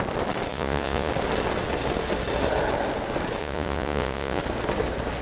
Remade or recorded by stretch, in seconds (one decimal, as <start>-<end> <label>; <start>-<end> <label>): 0.0-0.5 recorded; 0.5-1.1 remade; 1.1-3.4 recorded; 3.4-4.4 remade; 4.4-5.2 recorded